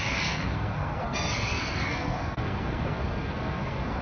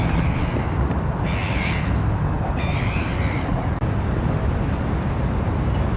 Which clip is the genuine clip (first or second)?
second